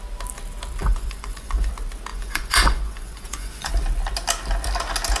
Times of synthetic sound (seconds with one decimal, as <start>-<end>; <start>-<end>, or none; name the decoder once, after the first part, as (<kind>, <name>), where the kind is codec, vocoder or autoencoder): 0.8-1.7 (vocoder, Vocos); 2.1-3.7